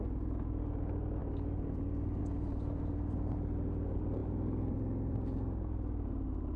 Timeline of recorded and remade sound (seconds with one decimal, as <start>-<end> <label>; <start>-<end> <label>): 0.0-6.6 recorded